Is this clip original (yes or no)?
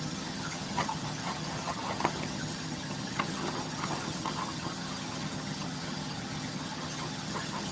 no